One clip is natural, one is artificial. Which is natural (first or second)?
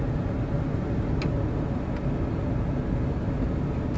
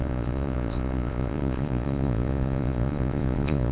first